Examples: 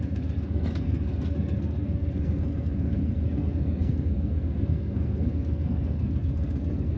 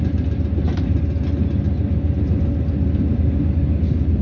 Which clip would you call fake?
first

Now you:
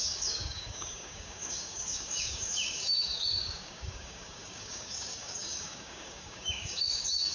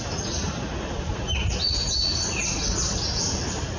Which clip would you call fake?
first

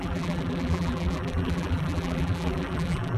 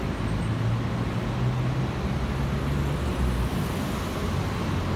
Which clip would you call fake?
first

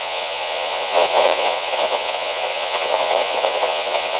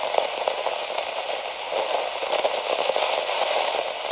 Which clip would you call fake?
first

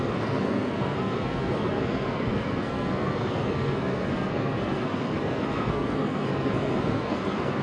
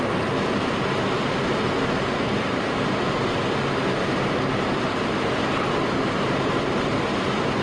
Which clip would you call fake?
first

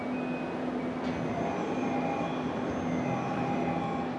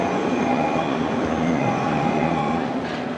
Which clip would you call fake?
second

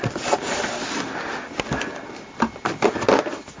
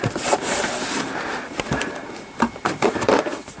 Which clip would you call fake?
second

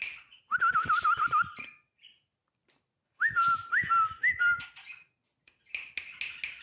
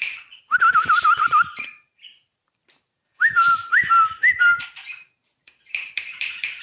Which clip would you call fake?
second